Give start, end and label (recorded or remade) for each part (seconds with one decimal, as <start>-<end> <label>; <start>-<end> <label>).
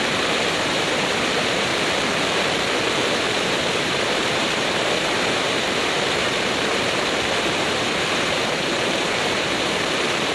0.0-1.7 remade; 1.7-3.4 recorded; 3.4-10.3 remade